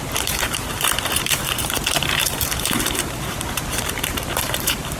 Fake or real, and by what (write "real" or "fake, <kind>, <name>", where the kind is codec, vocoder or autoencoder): fake, vocoder, BigVGAN v2